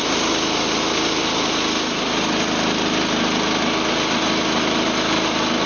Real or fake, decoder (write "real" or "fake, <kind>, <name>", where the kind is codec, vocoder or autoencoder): real